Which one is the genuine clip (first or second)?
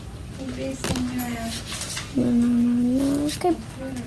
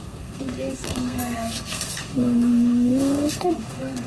first